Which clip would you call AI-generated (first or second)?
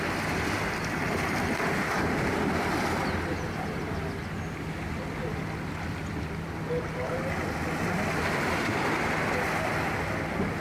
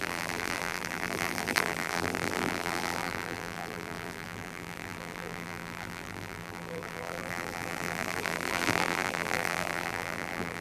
second